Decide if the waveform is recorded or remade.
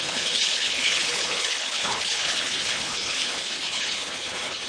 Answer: remade